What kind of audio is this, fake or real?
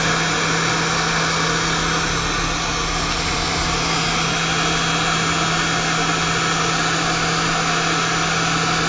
real